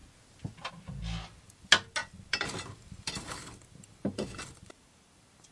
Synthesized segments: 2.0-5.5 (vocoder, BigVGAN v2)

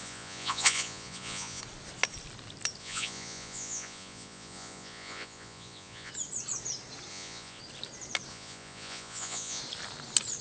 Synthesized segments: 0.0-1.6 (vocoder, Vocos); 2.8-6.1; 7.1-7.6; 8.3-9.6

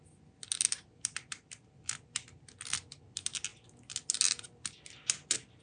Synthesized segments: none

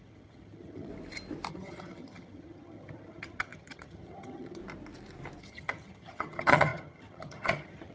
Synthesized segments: 0.0-0.9 (vocoder, HiFi-GAN); 1.5-4.6; 5.4-7.9

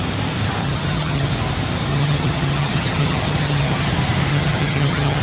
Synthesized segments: 0.6-1.3 (vocoder, HiFi-GAN); 1.9-3.9; 4.3-5.2

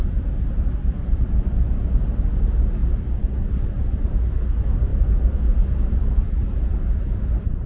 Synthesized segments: 0.0-0.5 (vocoder, BigVGAN v2); 2.8-3.3; 4.9-7.2

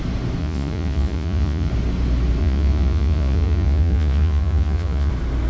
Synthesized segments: 0.4-1.7 (vocoder, Vocos); 2.4-5.1

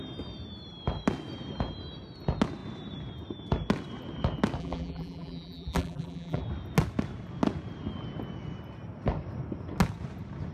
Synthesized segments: 4.6-6.4 (vocoder, BigVGAN v2)